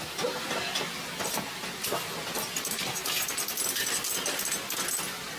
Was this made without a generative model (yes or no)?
yes